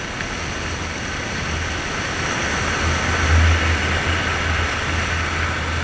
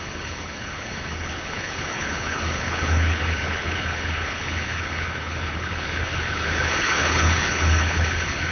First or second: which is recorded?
first